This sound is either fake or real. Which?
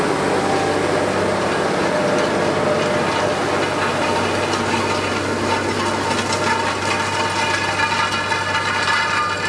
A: real